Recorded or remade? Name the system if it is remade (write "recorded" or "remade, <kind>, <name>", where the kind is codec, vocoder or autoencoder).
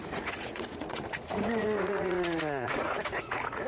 remade, vocoder, Vocos